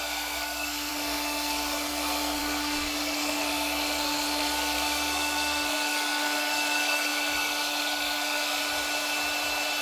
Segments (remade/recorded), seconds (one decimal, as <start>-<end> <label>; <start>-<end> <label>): 0.0-8.6 remade; 8.6-9.8 recorded